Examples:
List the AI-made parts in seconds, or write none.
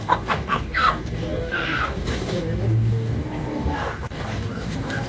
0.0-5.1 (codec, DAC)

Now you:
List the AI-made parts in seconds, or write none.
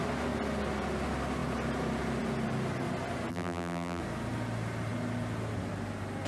3.3-4.0 (vocoder, BigVGAN v2)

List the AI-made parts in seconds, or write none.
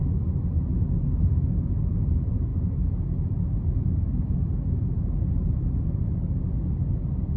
none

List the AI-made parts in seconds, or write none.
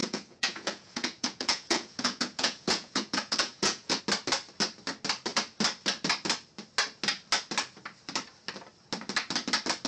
0.0-4.0 (vocoder, Vocos)